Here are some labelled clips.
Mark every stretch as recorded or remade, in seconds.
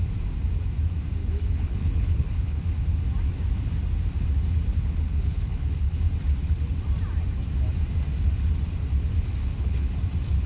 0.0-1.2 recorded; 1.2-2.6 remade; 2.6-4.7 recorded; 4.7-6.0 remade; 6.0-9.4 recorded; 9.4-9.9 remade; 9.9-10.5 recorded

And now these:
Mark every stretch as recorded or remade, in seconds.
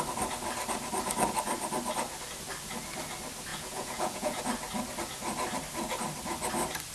0.0-3.5 recorded; 3.5-4.4 remade; 4.4-6.9 recorded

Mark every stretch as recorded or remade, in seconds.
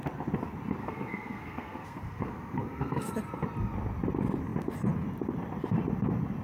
0.0-0.8 recorded; 0.8-3.1 remade; 3.1-6.4 recorded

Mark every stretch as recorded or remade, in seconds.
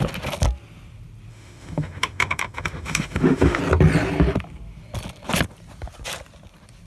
0.0-1.3 recorded; 1.3-3.6 remade; 3.6-6.9 recorded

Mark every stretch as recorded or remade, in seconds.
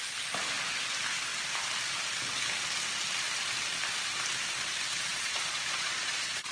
0.0-5.1 recorded; 5.1-6.5 remade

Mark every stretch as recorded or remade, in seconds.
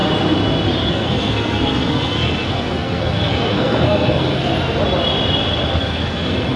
0.0-0.9 recorded; 0.9-4.5 remade; 4.5-5.7 recorded; 5.7-6.6 remade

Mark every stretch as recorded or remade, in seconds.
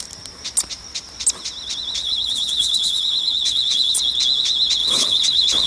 0.0-2.0 recorded; 2.0-4.0 remade; 4.0-4.8 recorded; 4.8-5.7 remade